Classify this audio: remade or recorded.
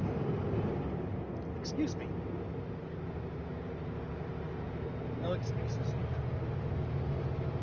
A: recorded